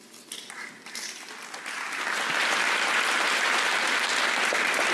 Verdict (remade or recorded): recorded